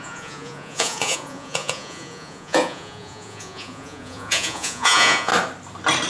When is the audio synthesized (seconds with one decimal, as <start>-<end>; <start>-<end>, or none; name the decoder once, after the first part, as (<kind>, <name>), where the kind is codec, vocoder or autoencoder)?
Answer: 0.0-5.3 (vocoder, Vocos)